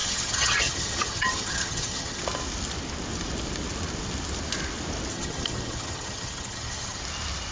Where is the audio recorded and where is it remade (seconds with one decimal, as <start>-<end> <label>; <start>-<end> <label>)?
0.0-2.2 remade; 2.2-5.1 recorded; 5.1-7.0 remade; 7.0-7.5 recorded